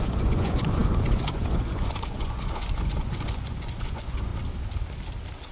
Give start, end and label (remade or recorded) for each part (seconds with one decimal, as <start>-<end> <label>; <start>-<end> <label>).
0.0-4.3 remade; 4.3-5.5 recorded